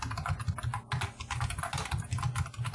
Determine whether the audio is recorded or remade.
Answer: recorded